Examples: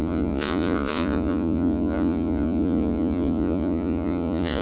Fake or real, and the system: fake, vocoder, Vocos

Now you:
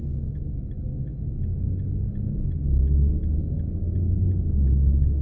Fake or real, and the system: fake, codec, DAC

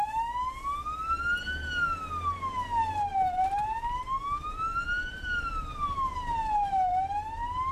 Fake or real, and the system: real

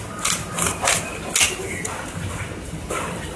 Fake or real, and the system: real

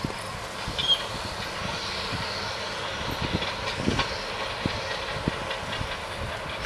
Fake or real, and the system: real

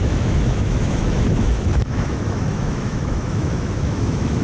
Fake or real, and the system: fake, autoencoder, DAC-VAE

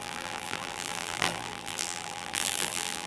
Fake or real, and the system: fake, vocoder, BigVGAN v2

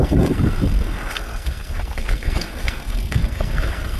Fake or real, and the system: fake, codec, SNAC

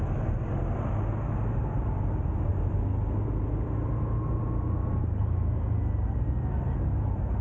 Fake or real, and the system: real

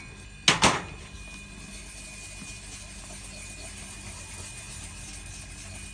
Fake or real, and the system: real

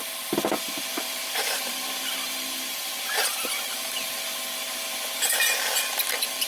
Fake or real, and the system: fake, vocoder, BigVGAN v2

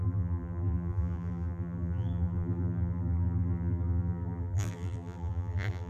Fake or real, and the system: fake, vocoder, BigVGAN v2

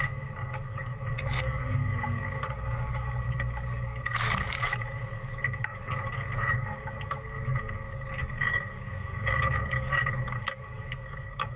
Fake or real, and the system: fake, codec, DAC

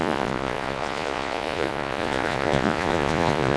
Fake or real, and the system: fake, vocoder, Vocos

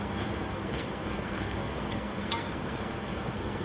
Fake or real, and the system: fake, codec, SNAC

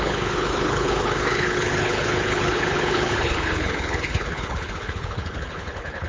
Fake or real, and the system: fake, codec, HILCodec